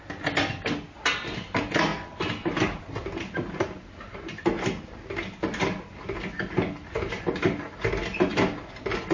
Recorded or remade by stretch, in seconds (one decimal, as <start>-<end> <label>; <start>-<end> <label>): 0.0-9.1 recorded